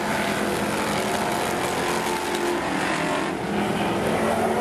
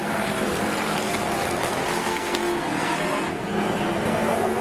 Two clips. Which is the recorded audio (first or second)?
first